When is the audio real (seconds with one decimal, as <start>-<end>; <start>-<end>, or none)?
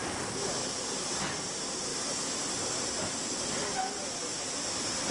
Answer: 0.0-0.6; 1.2-5.1